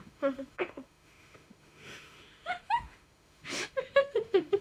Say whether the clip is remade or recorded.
remade